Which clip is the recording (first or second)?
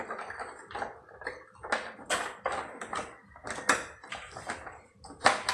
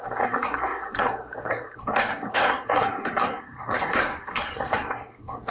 first